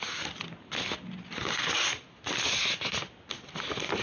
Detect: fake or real real